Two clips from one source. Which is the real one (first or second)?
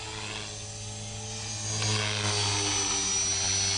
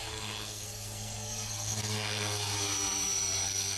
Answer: first